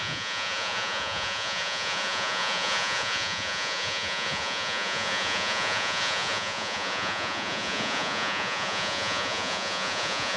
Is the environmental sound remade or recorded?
remade